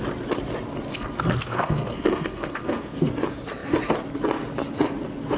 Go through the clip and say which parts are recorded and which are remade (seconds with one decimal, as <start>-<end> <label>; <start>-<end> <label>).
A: 0.0-0.9 recorded; 0.9-3.1 remade; 3.1-5.4 recorded